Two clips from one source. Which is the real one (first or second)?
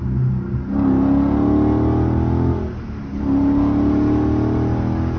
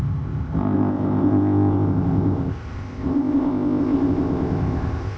first